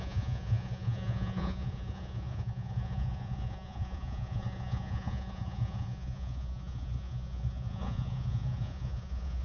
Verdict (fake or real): fake